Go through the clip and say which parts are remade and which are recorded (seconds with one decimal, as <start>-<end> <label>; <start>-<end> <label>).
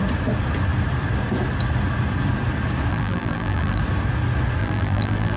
0.0-2.9 recorded; 2.9-3.8 remade; 3.8-4.6 recorded; 4.6-5.4 remade